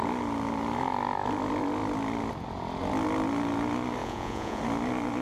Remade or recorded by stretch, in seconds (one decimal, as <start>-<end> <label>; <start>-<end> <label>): 0.0-4.0 recorded; 4.0-4.6 remade; 4.6-5.2 recorded

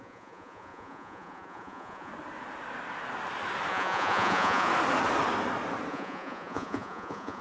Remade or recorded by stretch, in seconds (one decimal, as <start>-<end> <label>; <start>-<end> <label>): 0.0-2.1 remade; 2.1-3.7 recorded; 3.7-4.7 remade; 4.7-5.9 recorded; 5.9-7.4 remade

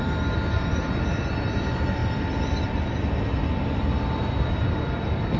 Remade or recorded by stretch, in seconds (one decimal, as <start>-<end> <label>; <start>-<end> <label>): 0.0-5.4 recorded

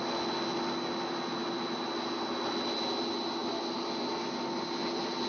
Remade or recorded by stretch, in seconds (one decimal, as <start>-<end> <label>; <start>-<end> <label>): 0.0-5.3 recorded

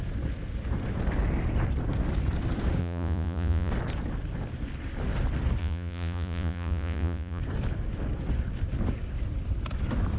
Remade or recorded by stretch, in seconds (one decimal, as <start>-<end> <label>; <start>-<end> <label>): 0.0-2.8 recorded; 2.8-3.7 remade; 3.7-5.6 recorded; 5.6-7.4 remade; 7.4-10.2 recorded

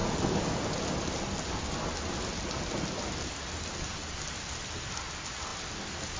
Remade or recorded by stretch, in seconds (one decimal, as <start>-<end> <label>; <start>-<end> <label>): 0.0-6.2 recorded

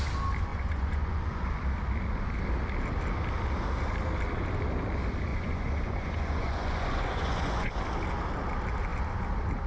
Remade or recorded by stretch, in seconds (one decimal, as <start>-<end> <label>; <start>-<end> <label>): 0.0-0.5 recorded; 0.5-1.4 remade; 1.4-5.3 recorded; 5.3-7.7 remade; 7.7-9.7 recorded